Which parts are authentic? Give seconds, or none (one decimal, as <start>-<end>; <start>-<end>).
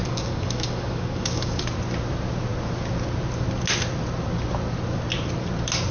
1.6-5.9